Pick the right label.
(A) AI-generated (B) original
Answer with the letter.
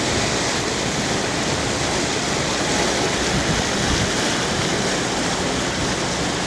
B